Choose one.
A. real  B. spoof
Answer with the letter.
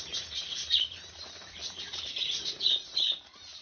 B